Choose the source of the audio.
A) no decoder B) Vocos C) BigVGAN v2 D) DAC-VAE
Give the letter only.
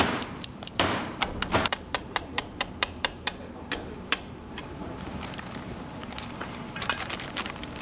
C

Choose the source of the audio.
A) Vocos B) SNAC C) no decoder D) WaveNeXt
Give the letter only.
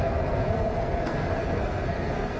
B